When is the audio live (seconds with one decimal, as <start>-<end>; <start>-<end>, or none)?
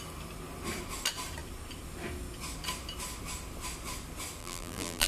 0.0-4.4